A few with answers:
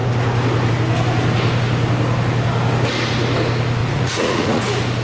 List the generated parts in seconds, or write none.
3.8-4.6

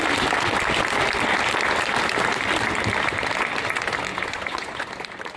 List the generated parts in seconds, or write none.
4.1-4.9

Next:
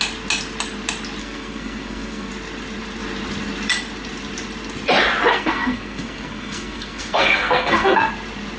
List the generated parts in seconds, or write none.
1.2-2.3; 5.3-8.1

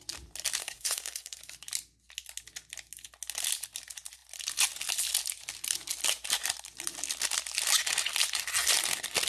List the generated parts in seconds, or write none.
0.6-1.4

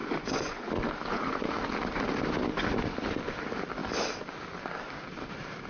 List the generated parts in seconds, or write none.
0.0-0.7; 1.1-1.7